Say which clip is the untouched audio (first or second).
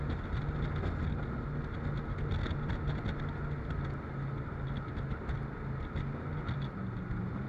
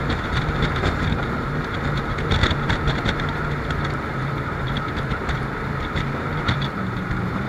first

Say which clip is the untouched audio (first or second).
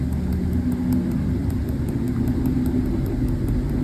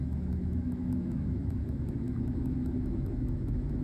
first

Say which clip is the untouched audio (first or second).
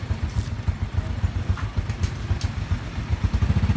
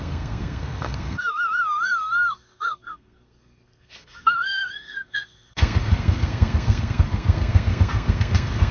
first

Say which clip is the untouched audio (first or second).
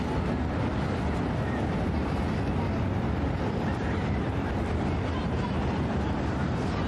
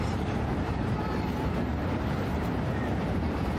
first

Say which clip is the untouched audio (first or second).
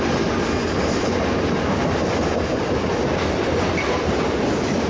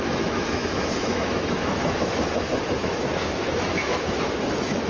first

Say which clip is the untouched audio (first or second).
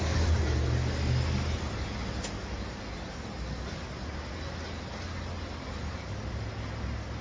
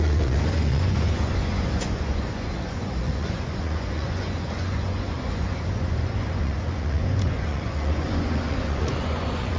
first